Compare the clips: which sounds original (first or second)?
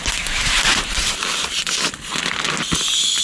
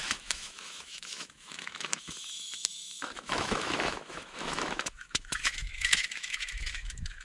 first